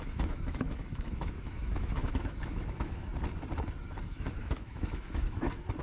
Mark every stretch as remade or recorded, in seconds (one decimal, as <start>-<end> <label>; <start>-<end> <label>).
0.0-3.1 remade; 3.1-4.0 recorded; 4.0-5.8 remade